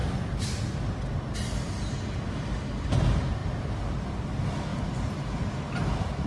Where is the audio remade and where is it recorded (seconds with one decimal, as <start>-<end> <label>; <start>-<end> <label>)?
0.0-3.4 recorded; 3.4-4.1 remade; 4.1-4.7 recorded; 4.7-5.6 remade; 5.6-6.3 recorded